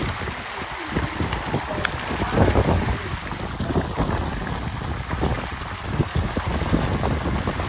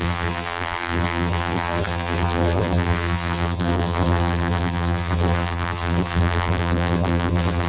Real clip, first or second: first